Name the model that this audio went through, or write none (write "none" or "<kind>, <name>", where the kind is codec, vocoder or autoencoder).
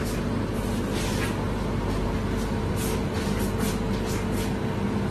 none